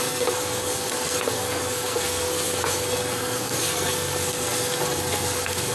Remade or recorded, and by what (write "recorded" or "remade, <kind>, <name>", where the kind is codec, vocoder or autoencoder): remade, codec, SNAC